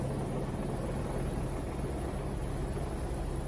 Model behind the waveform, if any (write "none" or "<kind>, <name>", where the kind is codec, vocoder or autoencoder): none